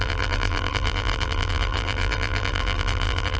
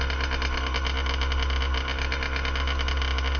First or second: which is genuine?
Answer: second